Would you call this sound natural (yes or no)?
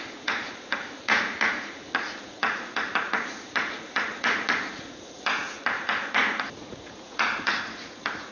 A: no